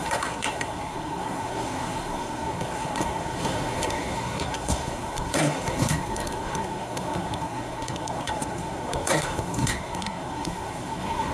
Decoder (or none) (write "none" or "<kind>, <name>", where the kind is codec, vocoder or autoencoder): codec, SNAC